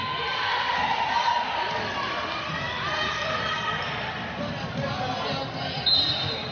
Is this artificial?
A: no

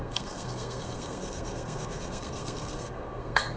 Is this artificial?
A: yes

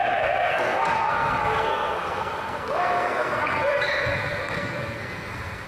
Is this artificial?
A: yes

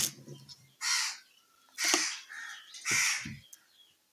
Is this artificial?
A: no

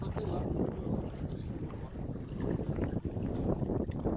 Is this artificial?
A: no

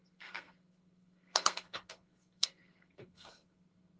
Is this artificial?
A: yes